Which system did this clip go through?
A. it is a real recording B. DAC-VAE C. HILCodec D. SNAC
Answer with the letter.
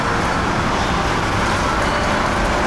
A